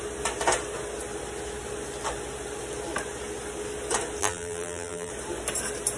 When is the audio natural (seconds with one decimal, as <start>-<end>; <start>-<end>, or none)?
0.0-4.2; 5.1-6.0